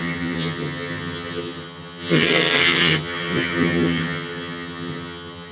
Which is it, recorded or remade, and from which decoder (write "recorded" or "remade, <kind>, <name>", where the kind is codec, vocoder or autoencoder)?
remade, vocoder, HiFi-GAN